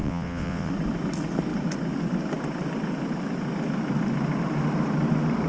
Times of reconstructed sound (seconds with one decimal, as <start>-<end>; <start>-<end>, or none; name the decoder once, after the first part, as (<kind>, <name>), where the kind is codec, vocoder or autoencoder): 0.0-0.7 (vocoder, WaveNeXt)